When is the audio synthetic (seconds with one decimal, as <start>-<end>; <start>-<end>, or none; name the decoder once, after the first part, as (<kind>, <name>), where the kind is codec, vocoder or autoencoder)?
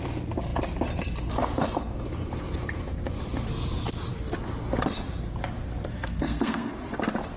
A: 5.9-6.7 (codec, SNAC)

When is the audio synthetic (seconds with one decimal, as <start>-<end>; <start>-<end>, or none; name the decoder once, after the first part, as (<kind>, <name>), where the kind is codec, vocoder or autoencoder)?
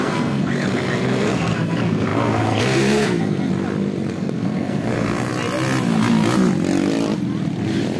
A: 0.0-3.5 (codec, SNAC); 4.1-5.3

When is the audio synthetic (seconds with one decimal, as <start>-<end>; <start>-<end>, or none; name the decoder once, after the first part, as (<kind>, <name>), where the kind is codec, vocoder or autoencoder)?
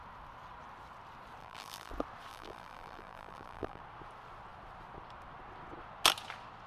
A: 1.4-1.9 (vocoder, BigVGAN v2); 2.3-3.8